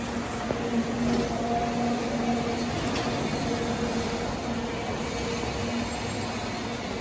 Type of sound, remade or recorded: recorded